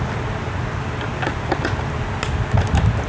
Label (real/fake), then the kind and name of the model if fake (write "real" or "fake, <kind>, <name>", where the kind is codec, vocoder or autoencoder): real